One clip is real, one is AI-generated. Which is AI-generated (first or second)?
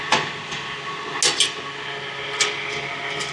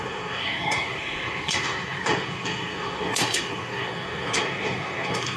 second